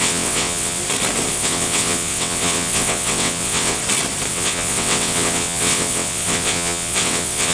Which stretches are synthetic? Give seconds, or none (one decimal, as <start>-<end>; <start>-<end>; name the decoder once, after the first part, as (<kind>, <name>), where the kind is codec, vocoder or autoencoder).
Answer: 0.0-0.8 (vocoder, WaveNeXt); 1.3-3.8; 4.3-7.5